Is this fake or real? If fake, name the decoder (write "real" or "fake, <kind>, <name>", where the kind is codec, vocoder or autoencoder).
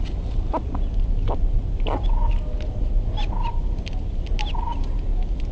real